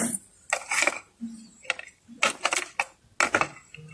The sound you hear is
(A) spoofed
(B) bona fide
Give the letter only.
B